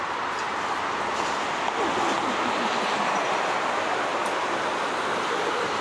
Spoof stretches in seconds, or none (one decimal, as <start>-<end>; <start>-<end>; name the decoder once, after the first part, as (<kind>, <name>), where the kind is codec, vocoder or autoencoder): none